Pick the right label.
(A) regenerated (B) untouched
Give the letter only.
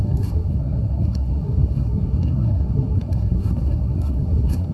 A